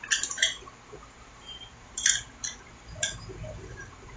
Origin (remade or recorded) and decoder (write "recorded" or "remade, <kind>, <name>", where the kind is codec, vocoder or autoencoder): remade, vocoder, BigVGAN v2